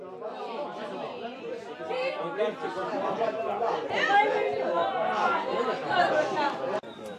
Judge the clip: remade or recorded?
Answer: recorded